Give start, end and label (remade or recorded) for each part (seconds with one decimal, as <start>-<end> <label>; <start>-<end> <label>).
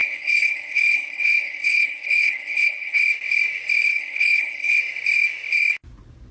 0.0-3.0 remade; 3.0-3.9 recorded; 3.9-4.8 remade; 4.8-6.3 recorded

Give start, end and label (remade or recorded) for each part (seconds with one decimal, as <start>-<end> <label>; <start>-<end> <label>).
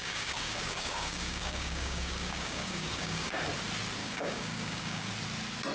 0.0-3.4 remade; 3.4-4.0 recorded; 4.0-5.1 remade; 5.1-5.7 recorded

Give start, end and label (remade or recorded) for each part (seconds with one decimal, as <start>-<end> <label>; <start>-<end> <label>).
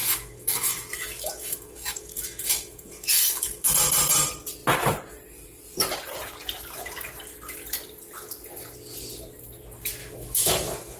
0.0-3.7 remade; 3.7-10.0 recorded; 10.0-11.0 remade